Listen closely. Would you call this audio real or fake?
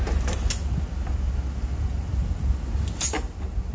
real